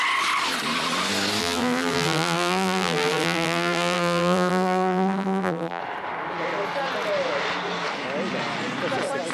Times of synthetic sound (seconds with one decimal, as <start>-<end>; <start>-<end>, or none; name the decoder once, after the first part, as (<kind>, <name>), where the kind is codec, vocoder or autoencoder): 1.4-5.8 (vocoder, BigVGAN v2)